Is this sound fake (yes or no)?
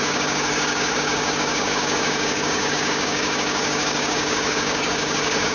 yes